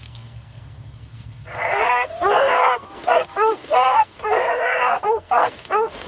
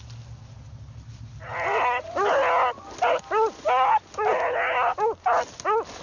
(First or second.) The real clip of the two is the second